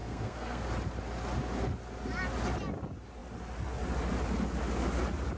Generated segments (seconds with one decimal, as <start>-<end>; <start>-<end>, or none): 0.0-0.6